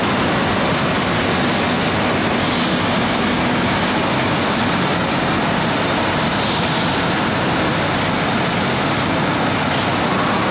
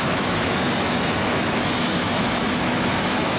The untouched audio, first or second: first